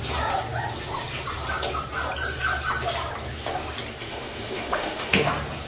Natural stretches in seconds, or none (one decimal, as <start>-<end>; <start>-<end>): 0.0-4.0; 5.3-5.7